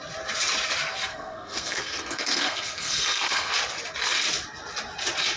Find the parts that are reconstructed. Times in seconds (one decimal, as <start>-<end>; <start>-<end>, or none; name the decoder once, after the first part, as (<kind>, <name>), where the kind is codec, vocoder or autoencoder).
1.1-3.5 (codec, SNAC)